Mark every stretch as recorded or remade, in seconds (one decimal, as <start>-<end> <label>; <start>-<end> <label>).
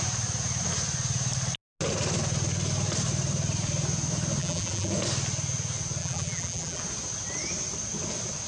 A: 0.0-4.4 recorded; 4.4-4.9 remade; 4.9-6.0 recorded; 6.0-6.8 remade; 6.8-8.5 recorded